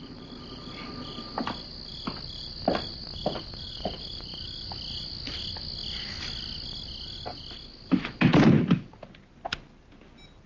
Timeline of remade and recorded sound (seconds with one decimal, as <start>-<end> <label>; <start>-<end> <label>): 0.0-10.5 recorded